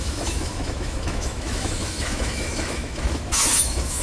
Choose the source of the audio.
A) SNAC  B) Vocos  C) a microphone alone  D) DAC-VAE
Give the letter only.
D